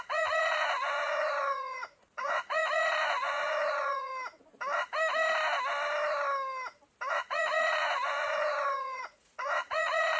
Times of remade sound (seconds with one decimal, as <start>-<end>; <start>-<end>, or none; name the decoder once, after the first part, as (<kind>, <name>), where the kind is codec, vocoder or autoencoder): 0.0-4.1 (vocoder, Vocos); 7.1-10.2